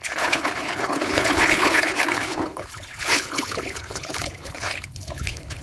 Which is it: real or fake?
fake